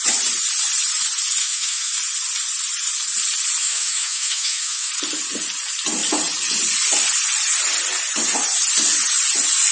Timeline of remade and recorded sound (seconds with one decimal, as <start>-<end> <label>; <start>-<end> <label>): 0.0-1.4 recorded; 1.4-1.9 remade; 1.9-3.6 recorded; 3.6-4.9 remade; 4.9-9.7 recorded